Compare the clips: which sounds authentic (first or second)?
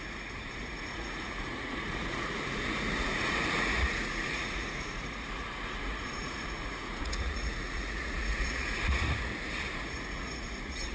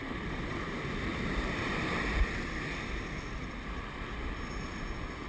second